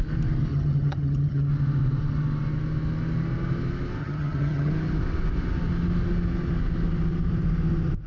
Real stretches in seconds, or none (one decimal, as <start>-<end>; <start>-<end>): 0.0-0.5; 1.5-4.0; 4.7-8.1